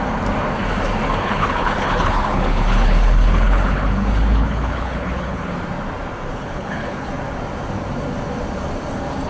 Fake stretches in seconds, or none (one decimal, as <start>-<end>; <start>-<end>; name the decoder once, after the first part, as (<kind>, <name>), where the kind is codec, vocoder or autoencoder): 1.2-5.5 (codec, HILCodec); 6.3-7.1

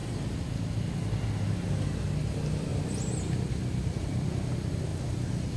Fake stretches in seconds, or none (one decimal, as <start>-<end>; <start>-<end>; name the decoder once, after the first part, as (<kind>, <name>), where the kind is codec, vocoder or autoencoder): 2.7-4.5 (vocoder, BigVGAN v2)

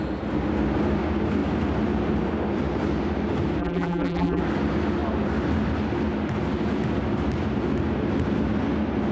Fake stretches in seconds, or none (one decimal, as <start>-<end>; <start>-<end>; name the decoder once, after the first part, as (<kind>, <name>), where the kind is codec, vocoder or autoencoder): 3.6-4.4 (vocoder, BigVGAN v2)

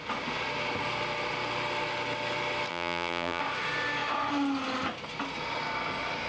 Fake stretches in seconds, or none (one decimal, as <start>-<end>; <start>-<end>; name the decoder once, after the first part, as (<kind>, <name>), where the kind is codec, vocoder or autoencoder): 2.7-3.4 (vocoder, BigVGAN v2)